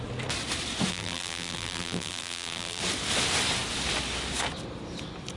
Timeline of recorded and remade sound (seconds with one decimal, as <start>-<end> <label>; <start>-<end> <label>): 0.0-0.9 recorded; 0.9-2.8 remade; 2.8-5.4 recorded